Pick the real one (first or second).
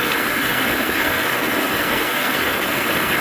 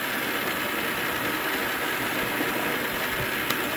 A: second